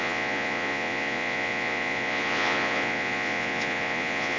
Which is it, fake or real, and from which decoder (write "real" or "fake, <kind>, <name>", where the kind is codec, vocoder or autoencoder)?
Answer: fake, vocoder, Vocos